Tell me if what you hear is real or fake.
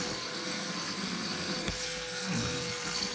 fake